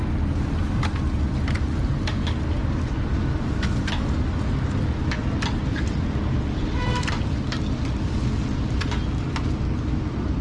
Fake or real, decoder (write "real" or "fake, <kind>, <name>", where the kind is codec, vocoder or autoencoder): real